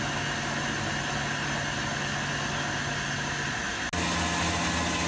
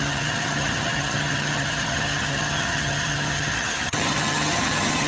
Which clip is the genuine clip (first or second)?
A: first